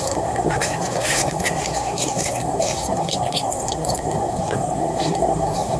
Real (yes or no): no